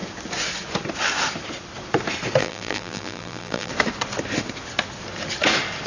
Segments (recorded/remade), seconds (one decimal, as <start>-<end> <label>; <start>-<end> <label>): 0.0-2.4 recorded; 2.4-3.7 remade; 3.7-5.9 recorded